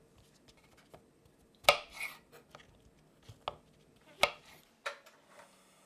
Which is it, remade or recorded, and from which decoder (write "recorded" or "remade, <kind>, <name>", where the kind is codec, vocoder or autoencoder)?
recorded